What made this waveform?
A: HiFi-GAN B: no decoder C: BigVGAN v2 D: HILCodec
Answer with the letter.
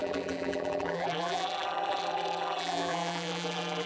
C